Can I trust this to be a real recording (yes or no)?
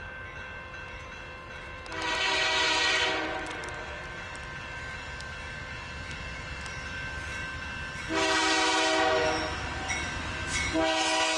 yes